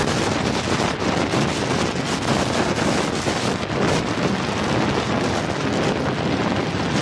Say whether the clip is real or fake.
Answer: real